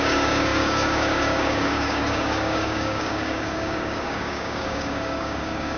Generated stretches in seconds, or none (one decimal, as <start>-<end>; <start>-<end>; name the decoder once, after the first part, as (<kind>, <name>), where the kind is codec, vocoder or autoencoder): 0.0-5.8 (codec, DAC)